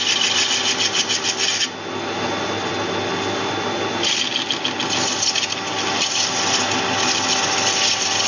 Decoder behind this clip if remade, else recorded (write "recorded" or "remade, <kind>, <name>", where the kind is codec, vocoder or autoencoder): recorded